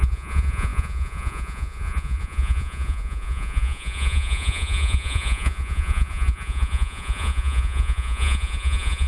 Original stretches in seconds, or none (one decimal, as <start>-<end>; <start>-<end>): none